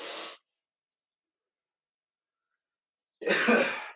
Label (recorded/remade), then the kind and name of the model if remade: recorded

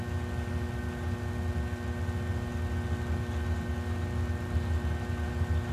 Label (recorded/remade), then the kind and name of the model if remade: recorded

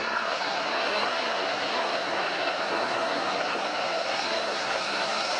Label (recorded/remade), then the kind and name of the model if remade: remade, codec, SNAC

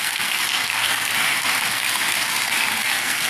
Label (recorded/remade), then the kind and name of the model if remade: remade, codec, SNAC